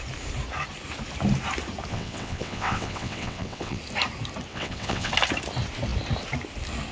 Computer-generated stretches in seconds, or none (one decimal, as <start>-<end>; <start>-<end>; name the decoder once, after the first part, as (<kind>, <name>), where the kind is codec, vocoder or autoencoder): 1.9-3.8 (vocoder, WaveNeXt); 4.5-5.1